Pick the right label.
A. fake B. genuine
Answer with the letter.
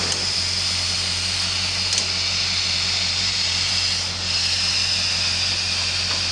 B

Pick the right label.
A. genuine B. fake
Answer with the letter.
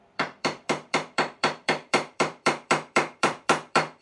B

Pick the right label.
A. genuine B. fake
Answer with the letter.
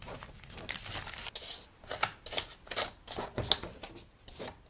A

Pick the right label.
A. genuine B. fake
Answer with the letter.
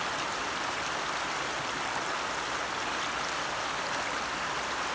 A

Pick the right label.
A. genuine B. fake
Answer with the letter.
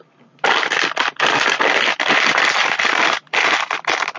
B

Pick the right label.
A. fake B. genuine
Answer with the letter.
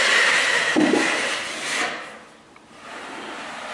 A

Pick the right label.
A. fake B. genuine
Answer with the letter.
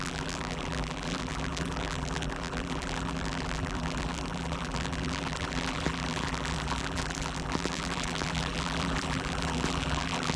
A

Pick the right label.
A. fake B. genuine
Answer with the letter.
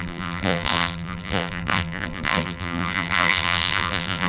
A